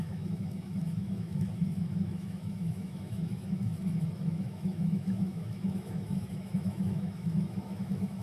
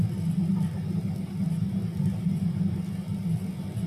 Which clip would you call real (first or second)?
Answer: second